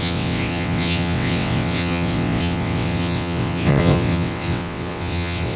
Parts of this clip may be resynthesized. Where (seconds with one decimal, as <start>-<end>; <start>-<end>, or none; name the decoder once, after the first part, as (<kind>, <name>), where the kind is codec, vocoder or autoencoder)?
0.0-5.6 (vocoder, WaveNeXt)